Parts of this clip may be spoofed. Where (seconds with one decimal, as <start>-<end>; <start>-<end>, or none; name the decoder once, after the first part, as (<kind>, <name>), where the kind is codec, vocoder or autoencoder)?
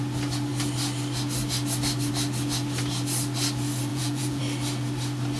3.9-4.4 (vocoder, Vocos)